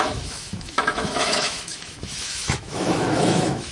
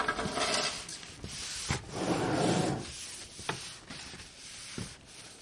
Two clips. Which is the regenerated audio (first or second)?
first